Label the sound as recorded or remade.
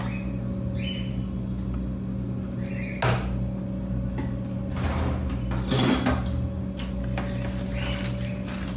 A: recorded